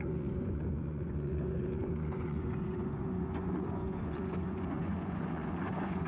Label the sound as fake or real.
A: fake